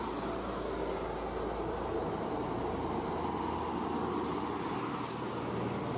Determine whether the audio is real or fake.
real